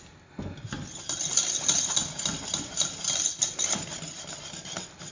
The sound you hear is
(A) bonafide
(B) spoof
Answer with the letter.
A